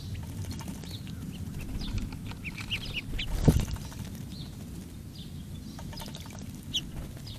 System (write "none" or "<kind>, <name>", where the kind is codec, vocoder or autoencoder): none